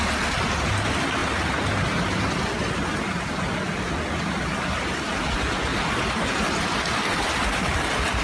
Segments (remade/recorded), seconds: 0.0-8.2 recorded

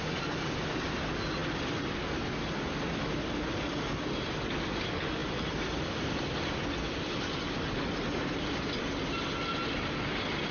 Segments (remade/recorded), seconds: 0.0-10.5 recorded

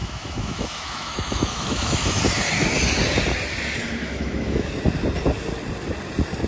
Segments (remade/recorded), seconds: 0.0-2.2 remade; 2.2-4.0 recorded; 4.0-4.7 remade; 4.7-6.5 recorded

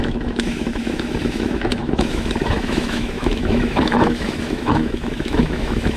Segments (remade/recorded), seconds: 0.0-6.0 remade